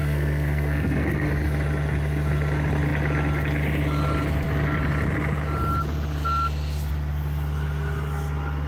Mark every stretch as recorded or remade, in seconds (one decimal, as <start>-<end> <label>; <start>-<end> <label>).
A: 0.0-1.3 remade; 1.3-8.7 recorded